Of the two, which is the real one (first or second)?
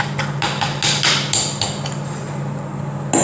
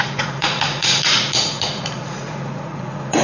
first